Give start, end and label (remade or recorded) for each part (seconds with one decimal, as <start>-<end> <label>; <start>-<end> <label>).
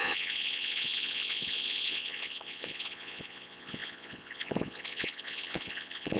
0.0-6.2 remade